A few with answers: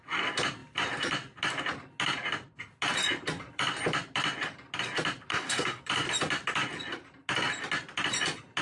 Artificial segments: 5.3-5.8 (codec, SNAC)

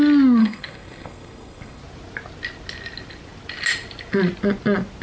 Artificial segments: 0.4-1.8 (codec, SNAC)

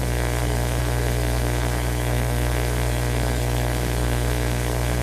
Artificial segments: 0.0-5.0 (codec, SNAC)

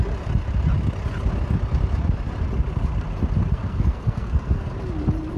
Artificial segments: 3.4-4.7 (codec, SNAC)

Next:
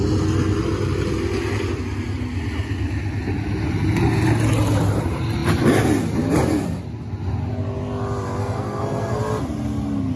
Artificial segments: 8.4-9.2 (codec, SNAC)

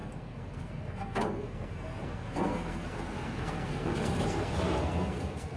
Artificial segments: 0.0-5.6 (codec, SNAC)

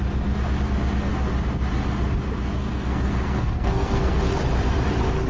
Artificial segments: 2.6-4.2 (codec, SNAC)